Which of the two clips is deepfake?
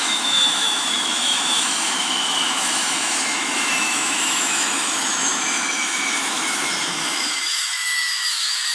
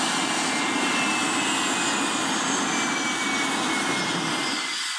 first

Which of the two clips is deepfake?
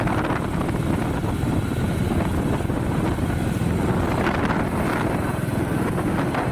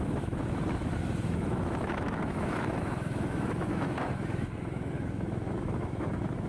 second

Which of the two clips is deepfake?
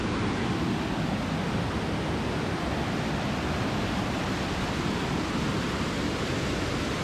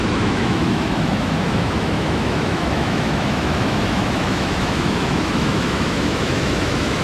second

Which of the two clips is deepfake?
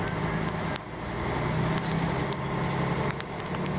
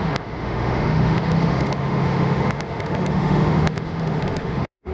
second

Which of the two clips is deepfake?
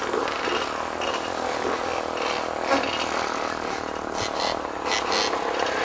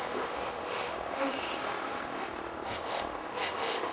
second